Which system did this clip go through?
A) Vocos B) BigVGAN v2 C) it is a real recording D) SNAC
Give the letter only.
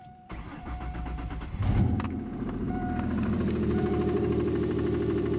B